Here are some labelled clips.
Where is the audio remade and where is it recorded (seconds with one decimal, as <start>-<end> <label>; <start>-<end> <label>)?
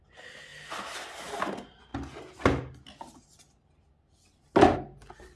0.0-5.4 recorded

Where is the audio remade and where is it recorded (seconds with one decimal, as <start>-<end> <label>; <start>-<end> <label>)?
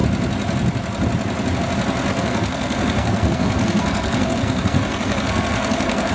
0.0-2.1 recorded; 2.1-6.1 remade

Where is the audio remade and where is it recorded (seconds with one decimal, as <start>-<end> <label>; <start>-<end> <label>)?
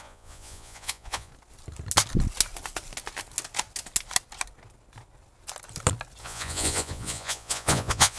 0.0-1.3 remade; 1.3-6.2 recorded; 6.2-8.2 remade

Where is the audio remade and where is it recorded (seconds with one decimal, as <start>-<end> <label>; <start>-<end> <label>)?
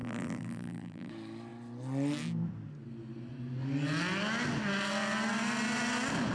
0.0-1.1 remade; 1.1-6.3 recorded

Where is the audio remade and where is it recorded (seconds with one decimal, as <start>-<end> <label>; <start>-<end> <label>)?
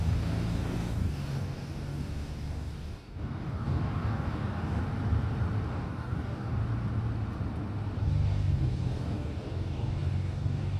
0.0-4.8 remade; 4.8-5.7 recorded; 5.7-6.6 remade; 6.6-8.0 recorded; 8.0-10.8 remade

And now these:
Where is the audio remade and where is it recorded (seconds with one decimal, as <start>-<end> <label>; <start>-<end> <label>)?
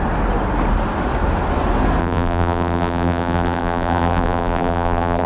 0.0-2.0 recorded; 2.0-5.3 remade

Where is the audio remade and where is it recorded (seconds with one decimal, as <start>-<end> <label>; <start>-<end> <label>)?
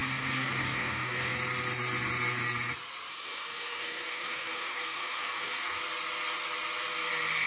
0.0-1.3 remade; 1.3-3.1 recorded; 3.1-5.8 remade; 5.8-7.5 recorded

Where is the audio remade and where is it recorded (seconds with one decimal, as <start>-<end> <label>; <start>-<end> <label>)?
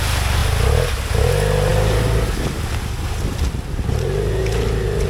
0.0-5.1 recorded